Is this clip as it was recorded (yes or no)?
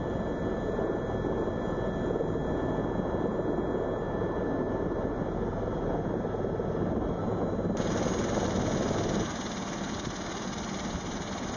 yes